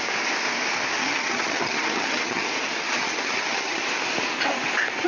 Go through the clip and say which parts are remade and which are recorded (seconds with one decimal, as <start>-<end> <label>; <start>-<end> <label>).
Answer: 0.0-1.0 recorded; 1.0-2.5 remade; 2.5-3.0 recorded; 3.0-3.8 remade; 3.8-5.1 recorded